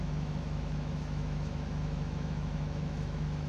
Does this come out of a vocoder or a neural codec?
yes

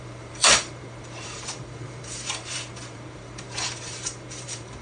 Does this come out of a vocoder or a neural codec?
yes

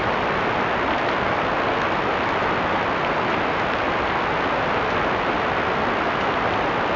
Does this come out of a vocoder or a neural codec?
no